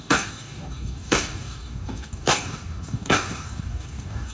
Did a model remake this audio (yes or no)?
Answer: yes